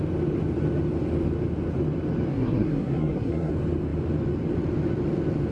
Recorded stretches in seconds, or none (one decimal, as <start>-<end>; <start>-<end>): 0.0-2.3; 3.5-5.5